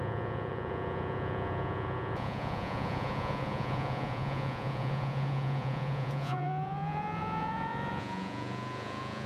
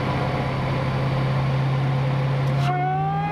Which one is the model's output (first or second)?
first